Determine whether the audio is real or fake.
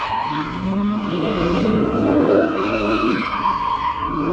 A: fake